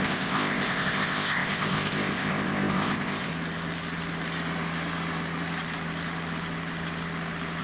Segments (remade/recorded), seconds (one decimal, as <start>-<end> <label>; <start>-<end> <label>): 0.0-3.3 remade; 3.3-7.6 recorded